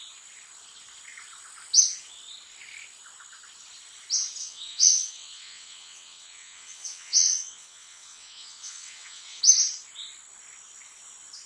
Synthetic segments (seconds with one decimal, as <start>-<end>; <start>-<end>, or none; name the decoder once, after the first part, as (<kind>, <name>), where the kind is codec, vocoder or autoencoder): 4.4-9.4 (vocoder, WaveNeXt)